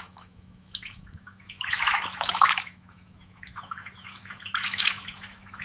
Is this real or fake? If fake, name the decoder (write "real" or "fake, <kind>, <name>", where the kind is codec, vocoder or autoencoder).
fake, autoencoder, DAC-VAE